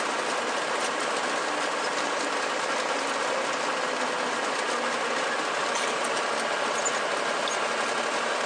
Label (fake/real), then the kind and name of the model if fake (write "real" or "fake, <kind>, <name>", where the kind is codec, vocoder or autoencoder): real